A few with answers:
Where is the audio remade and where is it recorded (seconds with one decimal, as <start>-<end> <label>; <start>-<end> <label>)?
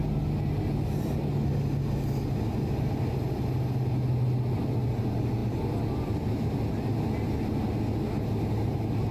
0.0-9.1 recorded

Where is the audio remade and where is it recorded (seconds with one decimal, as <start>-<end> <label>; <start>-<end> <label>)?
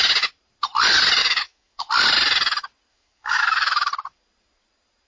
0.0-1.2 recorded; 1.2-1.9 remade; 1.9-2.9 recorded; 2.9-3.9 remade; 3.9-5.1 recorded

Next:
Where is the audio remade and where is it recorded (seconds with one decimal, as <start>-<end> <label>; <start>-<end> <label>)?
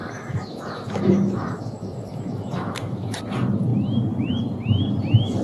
0.0-3.2 remade; 3.2-5.4 recorded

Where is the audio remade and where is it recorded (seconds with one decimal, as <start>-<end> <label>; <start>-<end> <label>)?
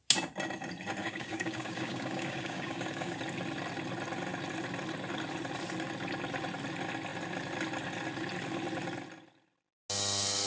0.0-1.0 recorded; 1.0-3.2 remade; 3.2-10.5 recorded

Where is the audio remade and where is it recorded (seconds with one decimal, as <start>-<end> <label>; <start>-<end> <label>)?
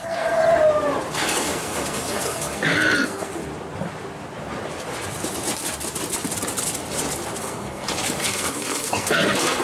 0.0-0.4 remade; 0.4-1.1 recorded; 1.1-3.4 remade; 3.4-7.4 recorded; 7.4-9.6 remade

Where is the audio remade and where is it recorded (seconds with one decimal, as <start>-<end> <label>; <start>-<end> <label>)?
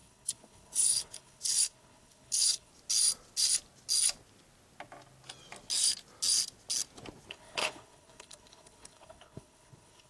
0.0-2.7 remade; 2.7-7.3 recorded; 7.3-10.1 remade